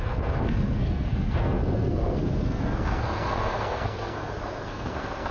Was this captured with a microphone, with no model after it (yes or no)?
no